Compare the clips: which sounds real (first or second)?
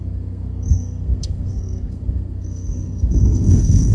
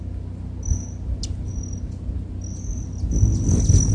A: second